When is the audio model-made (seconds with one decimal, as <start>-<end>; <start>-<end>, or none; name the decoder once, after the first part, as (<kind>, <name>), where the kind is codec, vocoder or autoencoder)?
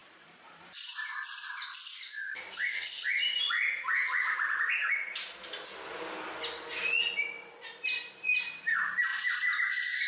0.0-1.0 (vocoder, BigVGAN v2); 9.1-9.7